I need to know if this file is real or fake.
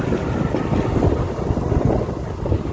real